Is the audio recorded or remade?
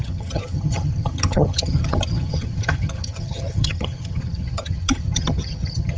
remade